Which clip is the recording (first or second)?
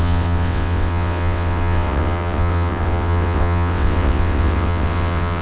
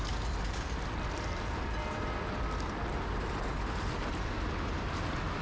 second